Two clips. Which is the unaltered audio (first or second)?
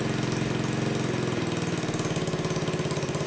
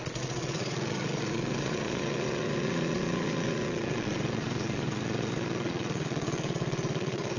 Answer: first